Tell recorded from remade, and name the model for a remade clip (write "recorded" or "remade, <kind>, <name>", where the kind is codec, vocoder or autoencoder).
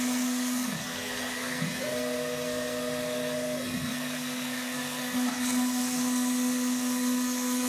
remade, codec, SNAC